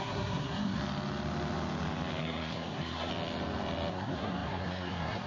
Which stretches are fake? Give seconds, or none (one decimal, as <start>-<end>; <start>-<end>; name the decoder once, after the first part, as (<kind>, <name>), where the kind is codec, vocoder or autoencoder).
0.0-0.8 (codec, SNAC); 2.2-3.1; 3.9-5.3